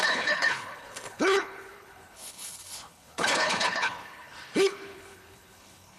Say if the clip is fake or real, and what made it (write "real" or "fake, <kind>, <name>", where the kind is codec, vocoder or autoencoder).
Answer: fake, codec, HILCodec